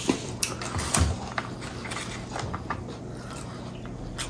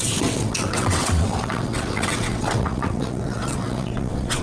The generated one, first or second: second